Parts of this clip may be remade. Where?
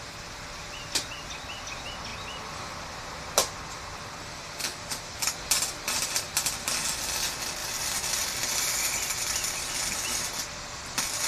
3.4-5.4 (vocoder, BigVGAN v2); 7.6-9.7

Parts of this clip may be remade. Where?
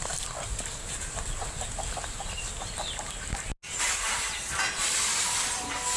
none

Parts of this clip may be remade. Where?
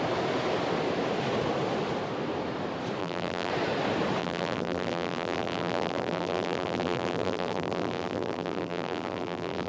3.0-3.5 (vocoder, BigVGAN v2); 4.2-9.7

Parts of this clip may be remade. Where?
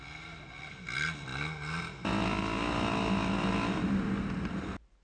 none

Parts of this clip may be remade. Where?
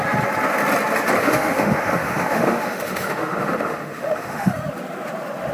1.2-4.5 (autoencoder, DAC-VAE)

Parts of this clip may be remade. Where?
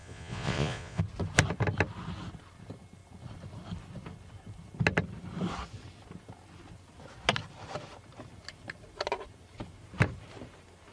0.0-1.0 (vocoder, Vocos)